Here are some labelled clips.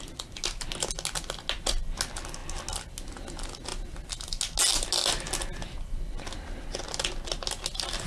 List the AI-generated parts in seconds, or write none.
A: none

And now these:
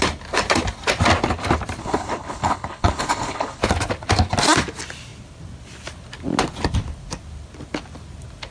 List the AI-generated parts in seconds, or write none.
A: 1.8-3.6 (codec, HILCodec)

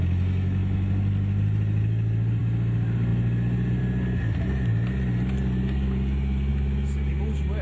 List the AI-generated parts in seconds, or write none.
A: none

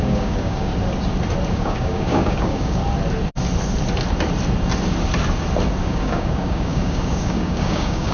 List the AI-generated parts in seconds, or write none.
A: 0.0-0.7 (codec, DAC); 1.5-2.8; 5.8-8.1